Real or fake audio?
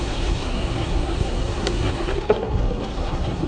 fake